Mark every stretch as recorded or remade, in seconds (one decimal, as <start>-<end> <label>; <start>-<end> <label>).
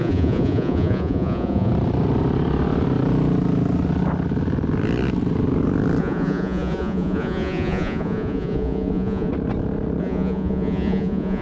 0.0-1.7 remade; 1.7-6.0 recorded; 6.0-9.3 remade; 9.3-10.0 recorded; 10.0-11.4 remade